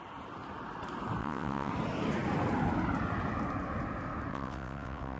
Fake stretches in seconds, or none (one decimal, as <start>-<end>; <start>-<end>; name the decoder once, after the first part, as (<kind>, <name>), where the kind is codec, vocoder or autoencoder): 1.2-1.7 (vocoder, WaveNeXt); 4.3-5.2